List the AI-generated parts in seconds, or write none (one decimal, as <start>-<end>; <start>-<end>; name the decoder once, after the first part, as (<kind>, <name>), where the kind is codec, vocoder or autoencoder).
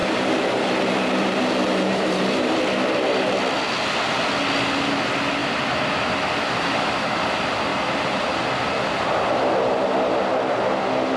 0.0-2.6 (vocoder, BigVGAN v2); 7.7-8.3